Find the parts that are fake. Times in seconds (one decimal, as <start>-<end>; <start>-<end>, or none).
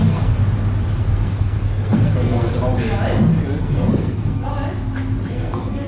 0.0-0.4; 1.0-2.5; 3.6-4.5; 5.3-5.9